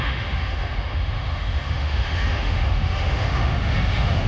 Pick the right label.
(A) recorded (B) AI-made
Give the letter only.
B